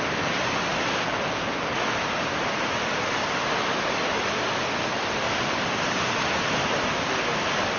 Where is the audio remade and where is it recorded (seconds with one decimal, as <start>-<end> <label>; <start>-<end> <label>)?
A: 0.0-7.8 recorded